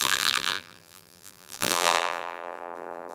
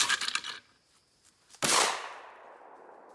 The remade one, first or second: first